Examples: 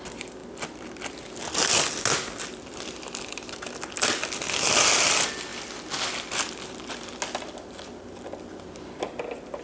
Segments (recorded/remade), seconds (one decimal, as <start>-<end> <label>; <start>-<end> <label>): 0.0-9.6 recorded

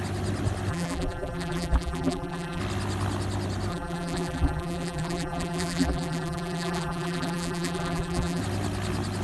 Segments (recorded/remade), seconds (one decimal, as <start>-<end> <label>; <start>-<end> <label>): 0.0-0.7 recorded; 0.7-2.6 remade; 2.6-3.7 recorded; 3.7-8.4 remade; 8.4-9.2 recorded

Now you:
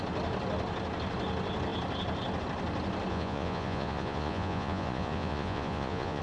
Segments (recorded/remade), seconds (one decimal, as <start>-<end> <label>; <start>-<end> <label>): 0.0-3.1 recorded; 3.1-6.2 remade